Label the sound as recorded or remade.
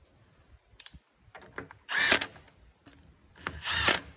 recorded